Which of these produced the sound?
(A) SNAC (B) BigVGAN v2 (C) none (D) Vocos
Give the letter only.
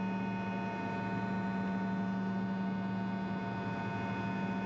C